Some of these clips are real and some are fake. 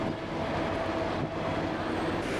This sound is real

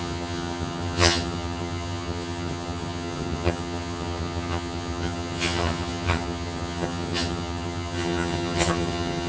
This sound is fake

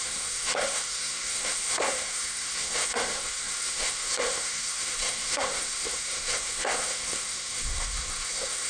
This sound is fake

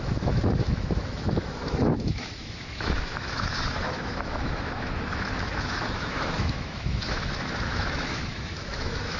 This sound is fake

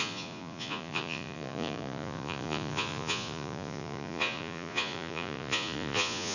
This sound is fake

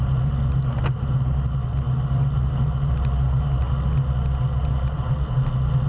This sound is real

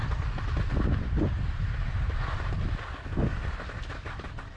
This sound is real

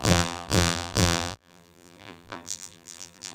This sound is fake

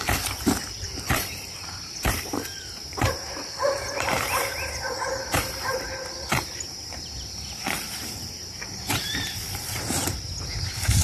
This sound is fake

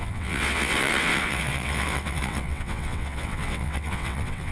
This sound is fake